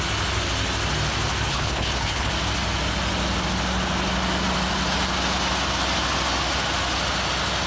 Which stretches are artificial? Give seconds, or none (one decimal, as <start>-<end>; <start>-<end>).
1.5-2.3